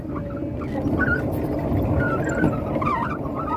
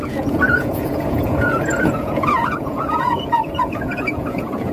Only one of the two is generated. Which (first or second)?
second